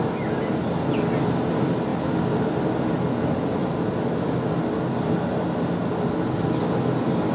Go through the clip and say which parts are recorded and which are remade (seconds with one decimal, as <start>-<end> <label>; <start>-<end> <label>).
0.0-7.3 recorded